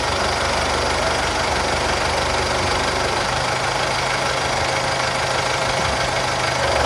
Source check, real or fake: real